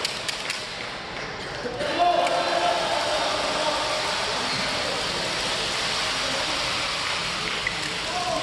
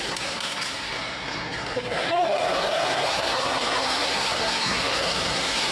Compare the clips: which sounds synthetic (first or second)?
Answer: second